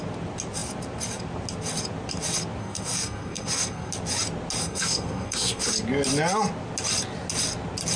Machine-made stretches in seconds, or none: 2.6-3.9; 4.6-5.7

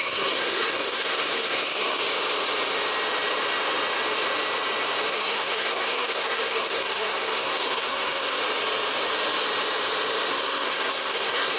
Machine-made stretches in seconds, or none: 0.0-2.0; 5.1-8.4; 10.3-11.6